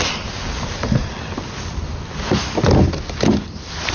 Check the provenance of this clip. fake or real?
real